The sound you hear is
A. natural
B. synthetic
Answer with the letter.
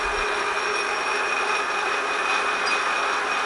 A